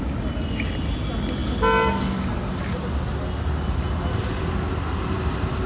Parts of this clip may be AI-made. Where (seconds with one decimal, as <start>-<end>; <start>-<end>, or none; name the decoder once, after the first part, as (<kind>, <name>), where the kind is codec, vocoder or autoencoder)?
none